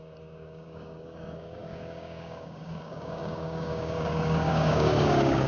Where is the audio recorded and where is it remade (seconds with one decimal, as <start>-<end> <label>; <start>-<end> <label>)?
0.0-5.5 remade